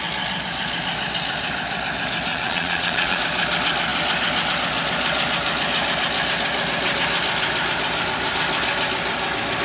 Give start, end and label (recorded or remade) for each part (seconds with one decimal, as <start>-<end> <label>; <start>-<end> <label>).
0.0-2.3 recorded; 2.3-3.2 remade; 3.2-9.6 recorded